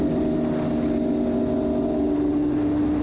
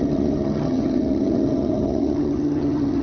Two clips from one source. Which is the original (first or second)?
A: first